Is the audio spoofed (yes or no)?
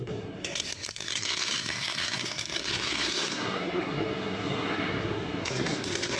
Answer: yes